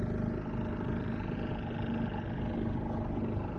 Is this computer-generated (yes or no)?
no